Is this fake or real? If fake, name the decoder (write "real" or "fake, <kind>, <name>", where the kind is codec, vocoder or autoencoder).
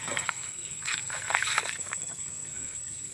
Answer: fake, codec, SNAC